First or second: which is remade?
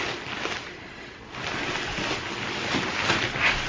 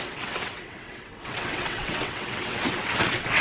second